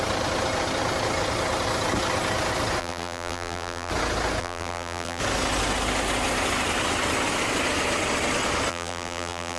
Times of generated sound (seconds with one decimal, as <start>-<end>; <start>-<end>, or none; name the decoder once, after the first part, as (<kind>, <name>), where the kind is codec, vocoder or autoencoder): 2.8-3.9 (vocoder, BigVGAN v2); 4.4-5.2; 8.7-9.6

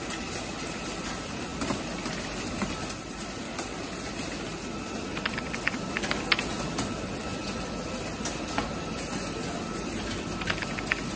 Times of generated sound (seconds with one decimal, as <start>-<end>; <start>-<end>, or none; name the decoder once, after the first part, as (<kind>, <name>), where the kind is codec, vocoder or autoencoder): 0.0-4.5 (vocoder, BigVGAN v2); 6.4-11.2

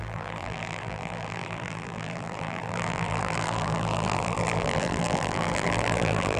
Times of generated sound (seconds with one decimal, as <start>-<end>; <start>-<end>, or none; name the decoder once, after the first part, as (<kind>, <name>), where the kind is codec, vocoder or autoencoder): 0.0-6.4 (vocoder, BigVGAN v2)

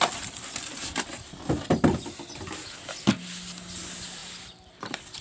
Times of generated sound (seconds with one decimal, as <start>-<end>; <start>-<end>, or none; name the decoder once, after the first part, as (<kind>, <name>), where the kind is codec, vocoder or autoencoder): 3.1-5.2 (vocoder, BigVGAN v2)

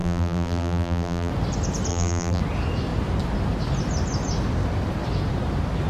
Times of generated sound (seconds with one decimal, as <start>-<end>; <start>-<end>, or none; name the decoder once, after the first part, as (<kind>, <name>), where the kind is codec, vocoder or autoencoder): 0.0-1.3 (vocoder, BigVGAN v2); 1.9-2.4

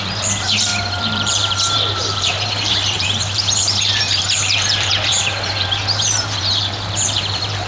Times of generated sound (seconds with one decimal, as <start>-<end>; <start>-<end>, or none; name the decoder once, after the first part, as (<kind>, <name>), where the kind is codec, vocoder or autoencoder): 0.0-7.7 (vocoder, BigVGAN v2)

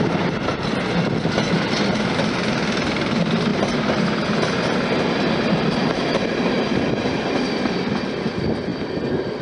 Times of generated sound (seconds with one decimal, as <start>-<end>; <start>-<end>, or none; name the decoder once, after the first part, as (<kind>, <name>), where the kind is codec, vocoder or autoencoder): 3.5-4.6 (vocoder, BigVGAN v2)